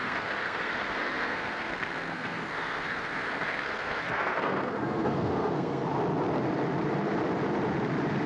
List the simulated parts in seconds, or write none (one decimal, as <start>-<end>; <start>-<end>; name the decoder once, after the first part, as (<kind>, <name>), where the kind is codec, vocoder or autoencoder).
0.0-5.8 (codec, SNAC)

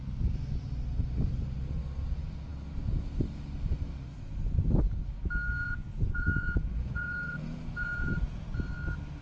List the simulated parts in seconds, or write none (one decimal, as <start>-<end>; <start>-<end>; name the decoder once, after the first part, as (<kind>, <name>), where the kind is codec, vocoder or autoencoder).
5.6-8.5 (vocoder, Vocos)

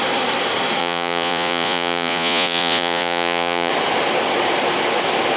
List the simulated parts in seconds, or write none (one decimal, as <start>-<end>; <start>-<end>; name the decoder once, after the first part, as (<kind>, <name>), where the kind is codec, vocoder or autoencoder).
0.8-3.7 (vocoder, Vocos)

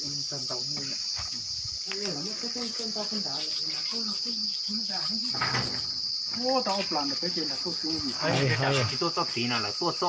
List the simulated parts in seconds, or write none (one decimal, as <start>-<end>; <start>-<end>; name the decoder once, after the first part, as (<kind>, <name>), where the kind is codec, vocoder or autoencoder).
none